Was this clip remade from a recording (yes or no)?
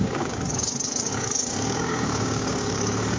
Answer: yes